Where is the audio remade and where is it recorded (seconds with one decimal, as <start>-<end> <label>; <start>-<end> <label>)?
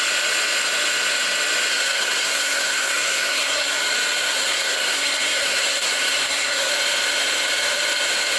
0.0-1.7 recorded; 1.7-3.8 remade; 3.8-4.3 recorded; 4.3-6.7 remade; 6.7-8.4 recorded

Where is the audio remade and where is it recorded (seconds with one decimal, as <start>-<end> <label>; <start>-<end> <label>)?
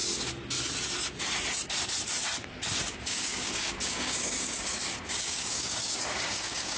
0.0-2.9 recorded; 2.9-6.8 remade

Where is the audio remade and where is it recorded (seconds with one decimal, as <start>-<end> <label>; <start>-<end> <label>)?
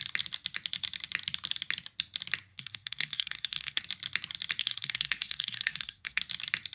0.0-2.5 recorded; 2.5-3.8 remade; 3.8-4.6 recorded; 4.6-6.2 remade; 6.2-6.7 recorded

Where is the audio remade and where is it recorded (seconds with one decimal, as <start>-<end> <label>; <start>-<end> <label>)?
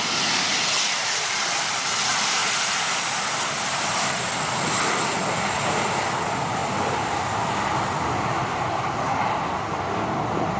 0.0-10.6 recorded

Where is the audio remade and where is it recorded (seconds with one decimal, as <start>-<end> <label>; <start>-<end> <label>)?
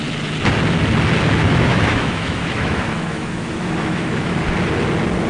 0.0-1.4 recorded; 1.4-4.4 remade; 4.4-5.3 recorded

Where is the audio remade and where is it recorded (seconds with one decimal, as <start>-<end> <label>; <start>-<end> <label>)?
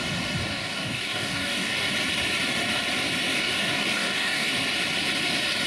0.0-0.4 recorded; 0.4-1.9 remade; 1.9-3.3 recorded; 3.3-4.5 remade; 4.5-5.7 recorded